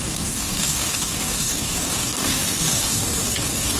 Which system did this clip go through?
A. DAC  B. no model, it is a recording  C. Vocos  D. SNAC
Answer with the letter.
A